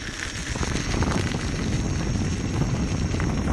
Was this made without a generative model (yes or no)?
yes